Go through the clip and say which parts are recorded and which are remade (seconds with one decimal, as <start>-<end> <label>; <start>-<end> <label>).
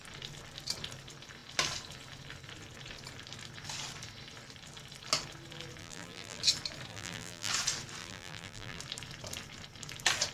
0.0-5.8 recorded; 5.8-6.4 remade; 6.4-6.9 recorded; 6.9-7.5 remade; 7.5-8.0 recorded; 8.0-8.8 remade; 8.8-10.3 recorded